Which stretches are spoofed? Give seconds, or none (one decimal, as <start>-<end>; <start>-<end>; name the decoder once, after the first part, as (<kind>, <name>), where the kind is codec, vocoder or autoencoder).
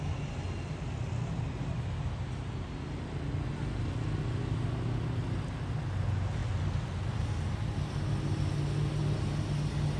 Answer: none